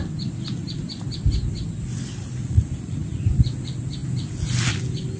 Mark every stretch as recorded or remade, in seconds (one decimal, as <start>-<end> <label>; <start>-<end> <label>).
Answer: 0.0-2.4 recorded; 2.4-3.2 remade; 3.2-5.2 recorded

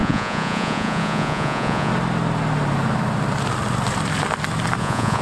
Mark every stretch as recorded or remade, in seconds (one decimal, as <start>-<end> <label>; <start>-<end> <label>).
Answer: 0.0-1.9 remade; 1.9-4.8 recorded; 4.8-5.2 remade

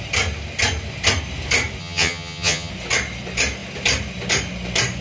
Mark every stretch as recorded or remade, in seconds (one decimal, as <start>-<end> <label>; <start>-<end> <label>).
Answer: 0.0-1.8 recorded; 1.8-2.7 remade; 2.7-5.0 recorded

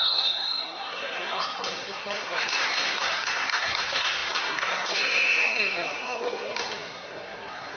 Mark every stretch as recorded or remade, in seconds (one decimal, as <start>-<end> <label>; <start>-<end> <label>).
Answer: 0.0-7.8 remade

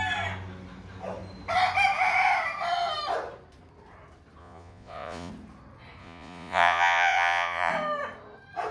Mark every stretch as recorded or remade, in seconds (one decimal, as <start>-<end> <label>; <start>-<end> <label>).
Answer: 0.0-4.4 recorded; 4.4-5.3 remade; 5.3-6.0 recorded; 6.0-7.7 remade; 7.7-8.7 recorded

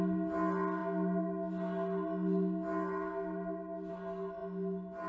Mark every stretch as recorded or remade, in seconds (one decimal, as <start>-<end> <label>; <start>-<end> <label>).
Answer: 0.0-5.1 recorded